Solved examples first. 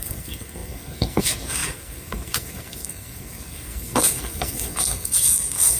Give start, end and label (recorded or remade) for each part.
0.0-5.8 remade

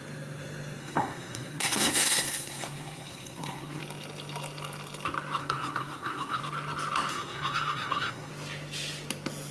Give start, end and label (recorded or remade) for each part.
0.0-0.8 recorded; 0.8-3.8 remade; 3.8-5.4 recorded; 5.4-6.4 remade; 6.4-7.1 recorded; 7.1-8.3 remade; 8.3-9.5 recorded

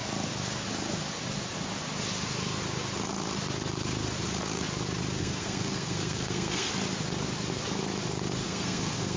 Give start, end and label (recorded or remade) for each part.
0.0-5.2 recorded; 5.2-6.7 remade; 6.7-8.4 recorded; 8.4-9.2 remade

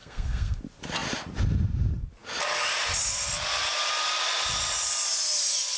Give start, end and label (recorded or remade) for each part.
0.0-0.6 remade; 0.6-5.8 recorded

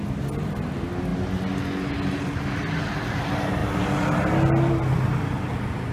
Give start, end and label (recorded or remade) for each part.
0.0-5.9 recorded

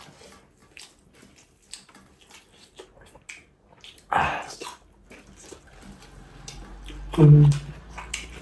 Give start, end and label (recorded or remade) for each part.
0.0-8.4 recorded

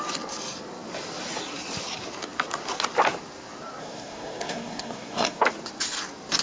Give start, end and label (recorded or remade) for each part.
0.0-3.8 recorded; 3.8-5.4 remade; 5.4-6.4 recorded

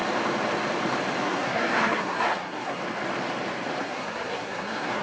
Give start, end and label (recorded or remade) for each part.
0.0-1.2 recorded; 1.2-2.8 remade; 2.8-3.8 recorded; 3.8-5.0 remade